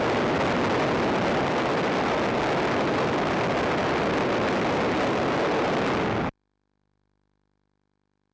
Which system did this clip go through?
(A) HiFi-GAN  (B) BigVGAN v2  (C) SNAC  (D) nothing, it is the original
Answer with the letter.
D